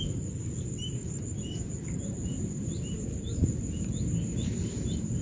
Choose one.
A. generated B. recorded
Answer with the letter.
A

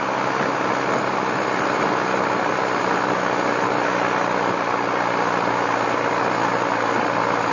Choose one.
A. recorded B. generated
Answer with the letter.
A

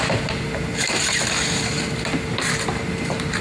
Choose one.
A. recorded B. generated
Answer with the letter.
A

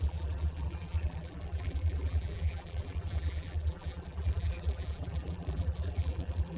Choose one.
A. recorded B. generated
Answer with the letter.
B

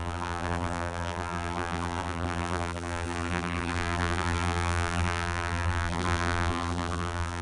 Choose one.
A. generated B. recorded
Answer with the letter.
A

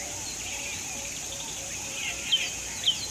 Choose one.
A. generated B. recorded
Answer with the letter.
A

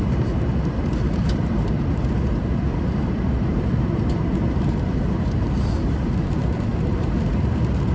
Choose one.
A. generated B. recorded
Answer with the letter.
A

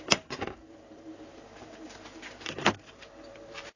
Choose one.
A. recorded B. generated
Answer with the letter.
B